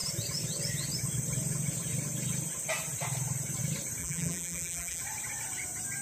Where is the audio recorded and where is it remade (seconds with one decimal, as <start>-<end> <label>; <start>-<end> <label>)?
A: 0.0-4.0 recorded; 4.0-5.0 remade; 5.0-6.0 recorded